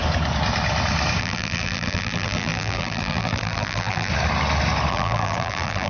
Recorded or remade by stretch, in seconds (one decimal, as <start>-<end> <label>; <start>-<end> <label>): 0.0-1.2 recorded; 1.2-4.1 remade; 4.1-4.9 recorded; 4.9-5.9 remade